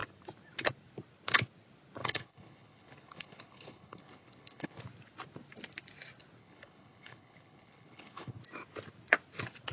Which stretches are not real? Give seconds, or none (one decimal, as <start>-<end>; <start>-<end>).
2.0-4.8; 6.4-8.4